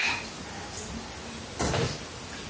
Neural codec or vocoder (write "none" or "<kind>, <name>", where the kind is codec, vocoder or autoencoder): none